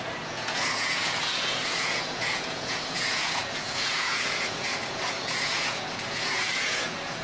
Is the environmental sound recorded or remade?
remade